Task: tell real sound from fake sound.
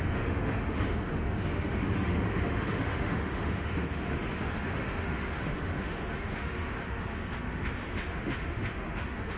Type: fake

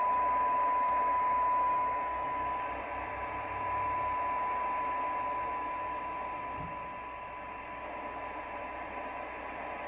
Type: real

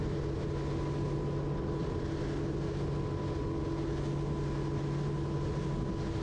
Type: real